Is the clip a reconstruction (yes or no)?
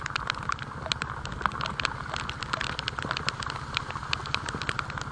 no